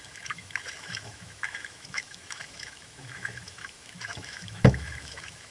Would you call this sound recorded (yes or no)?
no